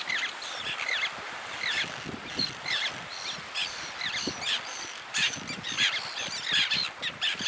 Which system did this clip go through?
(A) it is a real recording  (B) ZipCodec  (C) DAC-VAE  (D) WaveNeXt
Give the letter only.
A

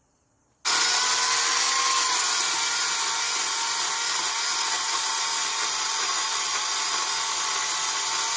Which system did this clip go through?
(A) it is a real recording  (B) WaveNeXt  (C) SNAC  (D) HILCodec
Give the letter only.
A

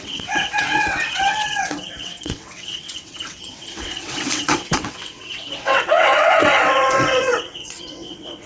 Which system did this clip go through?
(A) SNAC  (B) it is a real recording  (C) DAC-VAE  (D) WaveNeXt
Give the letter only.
D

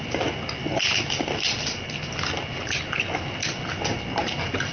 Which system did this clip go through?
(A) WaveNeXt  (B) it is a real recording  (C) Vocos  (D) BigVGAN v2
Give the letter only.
B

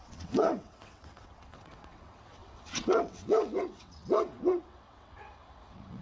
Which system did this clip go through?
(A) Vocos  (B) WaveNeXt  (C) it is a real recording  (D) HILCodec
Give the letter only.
B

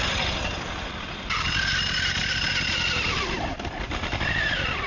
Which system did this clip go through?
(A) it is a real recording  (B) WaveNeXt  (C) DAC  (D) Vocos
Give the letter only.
A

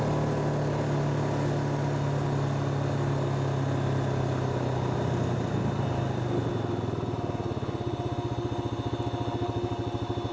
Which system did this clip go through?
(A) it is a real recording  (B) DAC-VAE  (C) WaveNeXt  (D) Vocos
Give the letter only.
A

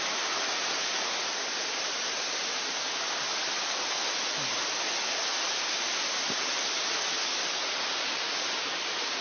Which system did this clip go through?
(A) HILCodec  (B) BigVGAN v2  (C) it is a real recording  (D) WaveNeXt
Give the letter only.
C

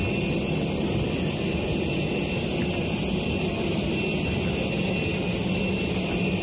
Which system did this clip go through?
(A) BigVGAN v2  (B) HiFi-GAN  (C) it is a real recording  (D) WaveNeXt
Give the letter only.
C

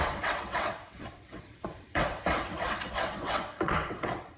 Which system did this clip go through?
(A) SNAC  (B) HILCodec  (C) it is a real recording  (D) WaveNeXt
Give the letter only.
D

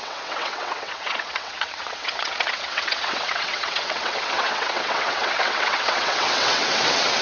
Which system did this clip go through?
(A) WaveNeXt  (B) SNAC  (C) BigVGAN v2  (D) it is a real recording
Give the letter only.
A